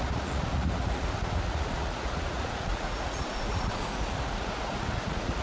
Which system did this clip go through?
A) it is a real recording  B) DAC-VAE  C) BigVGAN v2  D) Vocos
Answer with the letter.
D